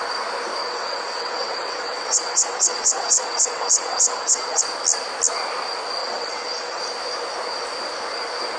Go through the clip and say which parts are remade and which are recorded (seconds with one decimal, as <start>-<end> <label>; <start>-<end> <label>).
0.0-0.6 recorded; 0.6-4.6 remade; 4.6-6.0 recorded; 6.0-6.8 remade; 6.8-8.6 recorded